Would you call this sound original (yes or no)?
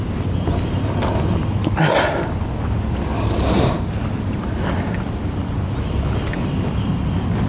yes